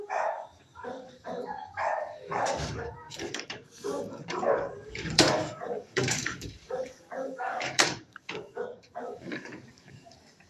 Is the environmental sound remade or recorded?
remade